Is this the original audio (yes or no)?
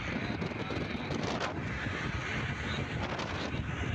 yes